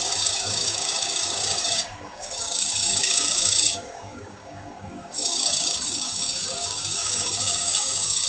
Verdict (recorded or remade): remade